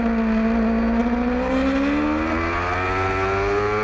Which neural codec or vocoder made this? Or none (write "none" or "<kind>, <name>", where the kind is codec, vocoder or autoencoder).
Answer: none